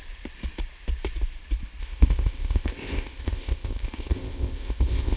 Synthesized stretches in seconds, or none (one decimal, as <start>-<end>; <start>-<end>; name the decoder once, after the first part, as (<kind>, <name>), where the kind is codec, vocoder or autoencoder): 1.8-5.2 (codec, ZipCodec)